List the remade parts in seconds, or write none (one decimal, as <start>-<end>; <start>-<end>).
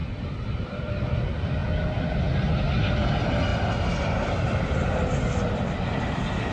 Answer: 0.0-0.9